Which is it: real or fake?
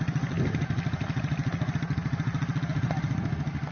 real